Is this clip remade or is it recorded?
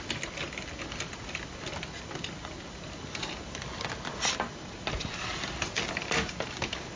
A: recorded